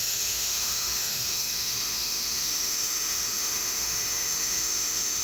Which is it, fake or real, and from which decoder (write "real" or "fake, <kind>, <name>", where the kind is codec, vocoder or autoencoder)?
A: fake, autoencoder, DAC-VAE